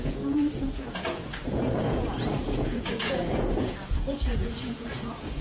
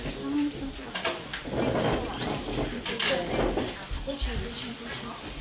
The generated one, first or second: first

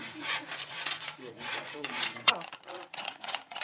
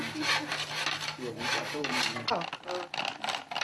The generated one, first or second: first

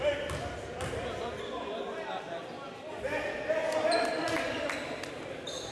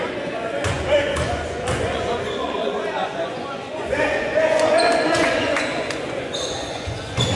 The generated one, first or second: second